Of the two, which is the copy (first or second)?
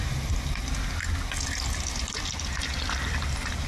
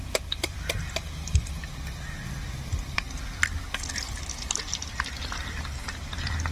second